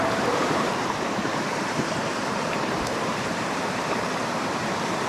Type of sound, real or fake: fake